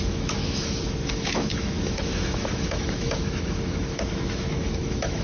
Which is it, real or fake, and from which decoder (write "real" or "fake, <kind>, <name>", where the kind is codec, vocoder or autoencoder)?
fake, autoencoder, DAC-VAE